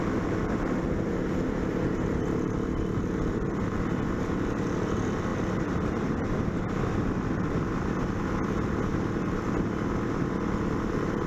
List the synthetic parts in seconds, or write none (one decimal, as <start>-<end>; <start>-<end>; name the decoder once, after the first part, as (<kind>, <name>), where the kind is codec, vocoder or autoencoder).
none